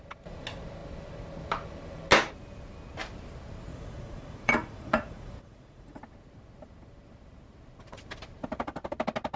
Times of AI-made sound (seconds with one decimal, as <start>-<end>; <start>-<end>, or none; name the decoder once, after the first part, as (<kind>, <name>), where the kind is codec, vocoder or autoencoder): 3.7-6.0 (vocoder, Vocos)